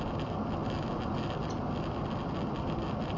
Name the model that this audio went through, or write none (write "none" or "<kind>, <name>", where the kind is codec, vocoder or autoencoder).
none